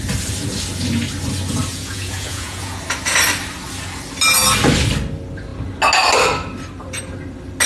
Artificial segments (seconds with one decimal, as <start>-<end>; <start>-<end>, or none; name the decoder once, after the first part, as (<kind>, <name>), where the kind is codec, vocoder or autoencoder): 1.7-2.8 (vocoder, Vocos)